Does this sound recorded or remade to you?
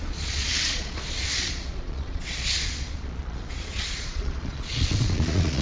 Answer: remade